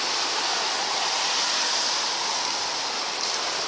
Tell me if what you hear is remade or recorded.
recorded